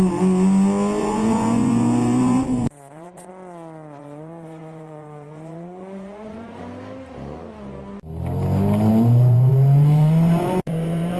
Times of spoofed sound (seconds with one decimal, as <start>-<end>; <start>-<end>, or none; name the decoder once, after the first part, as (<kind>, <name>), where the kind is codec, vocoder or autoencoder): 1.0-3.3 (vocoder, Vocos); 4.0-6.6; 8.9-11.2